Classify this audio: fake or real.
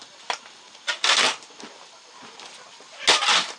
real